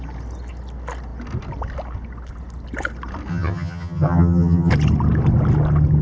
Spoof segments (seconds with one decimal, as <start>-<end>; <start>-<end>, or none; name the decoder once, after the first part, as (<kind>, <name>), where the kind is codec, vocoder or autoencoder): 3.3-4.7 (vocoder, HiFi-GAN)